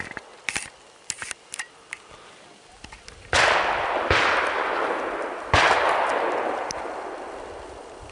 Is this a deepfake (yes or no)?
no